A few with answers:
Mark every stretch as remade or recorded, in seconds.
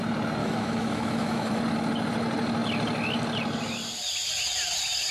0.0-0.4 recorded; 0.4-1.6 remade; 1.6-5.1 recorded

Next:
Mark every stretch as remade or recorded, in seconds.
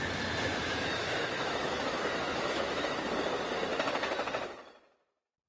0.0-0.6 recorded; 0.6-3.0 remade; 3.0-5.5 recorded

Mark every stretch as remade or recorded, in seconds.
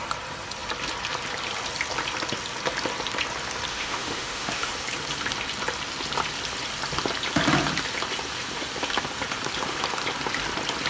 0.0-3.7 recorded; 3.7-4.7 remade; 4.7-10.9 recorded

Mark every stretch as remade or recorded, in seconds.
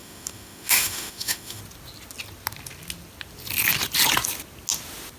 0.0-1.6 remade; 1.6-5.2 recorded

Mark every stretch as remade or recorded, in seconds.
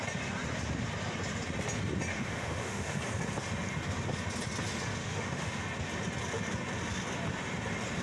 0.0-2.1 recorded; 2.1-3.0 remade; 3.0-5.0 recorded; 5.0-5.6 remade; 5.6-8.0 recorded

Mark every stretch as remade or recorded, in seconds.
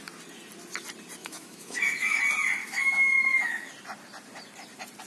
0.0-1.2 recorded; 1.2-2.2 remade; 2.2-2.6 recorded; 2.6-3.7 remade; 3.7-5.1 recorded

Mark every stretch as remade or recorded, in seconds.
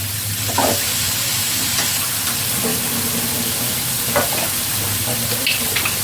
0.0-6.0 recorded